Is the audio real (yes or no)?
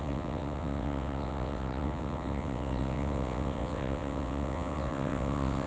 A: no